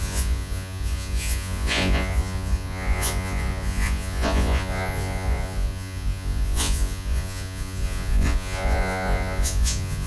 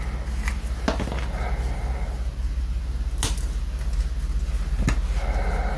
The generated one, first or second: first